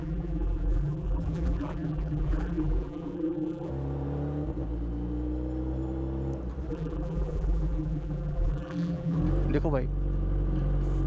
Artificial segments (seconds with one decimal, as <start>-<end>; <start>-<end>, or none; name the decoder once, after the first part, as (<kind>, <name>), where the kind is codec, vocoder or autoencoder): 0.0-3.7 (vocoder, BigVGAN v2); 6.7-9.2